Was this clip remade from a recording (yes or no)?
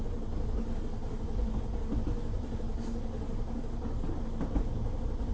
no